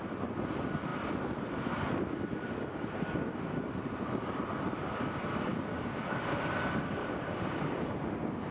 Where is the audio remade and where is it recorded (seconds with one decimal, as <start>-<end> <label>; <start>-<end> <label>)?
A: 0.0-5.5 recorded; 5.5-6.0 remade; 6.0-7.0 recorded; 7.0-7.8 remade; 7.8-8.5 recorded